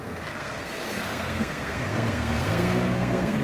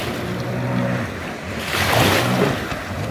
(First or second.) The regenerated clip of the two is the first